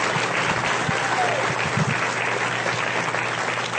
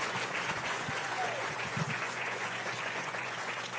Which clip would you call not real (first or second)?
second